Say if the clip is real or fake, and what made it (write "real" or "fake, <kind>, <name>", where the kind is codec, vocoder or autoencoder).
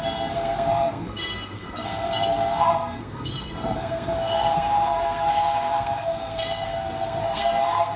fake, codec, SNAC